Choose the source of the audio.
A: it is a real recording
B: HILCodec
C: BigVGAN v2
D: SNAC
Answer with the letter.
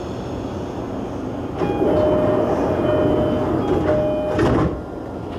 A